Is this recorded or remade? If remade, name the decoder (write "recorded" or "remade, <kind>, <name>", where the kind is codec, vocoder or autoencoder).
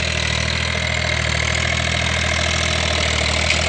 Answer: recorded